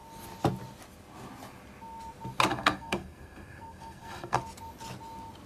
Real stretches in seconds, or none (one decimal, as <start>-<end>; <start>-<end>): 0.0-2.5; 4.4-5.5